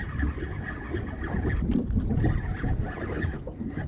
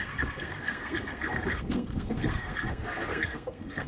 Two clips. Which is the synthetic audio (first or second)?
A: second